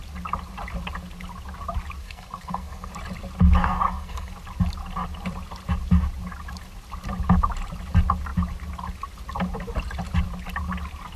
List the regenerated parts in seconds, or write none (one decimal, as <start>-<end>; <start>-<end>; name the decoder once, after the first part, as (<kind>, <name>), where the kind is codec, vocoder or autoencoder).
2.0-2.9 (codec, SNAC); 3.6-4.3